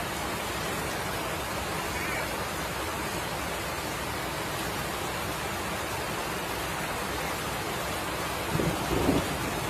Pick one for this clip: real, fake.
real